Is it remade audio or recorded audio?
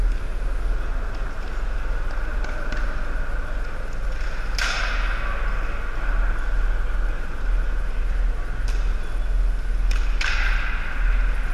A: recorded